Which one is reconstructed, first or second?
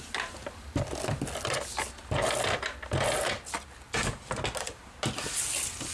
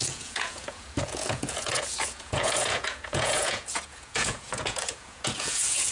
second